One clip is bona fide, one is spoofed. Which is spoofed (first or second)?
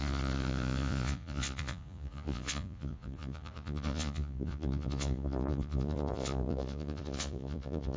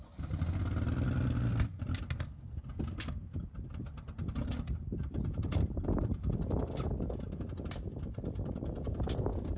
first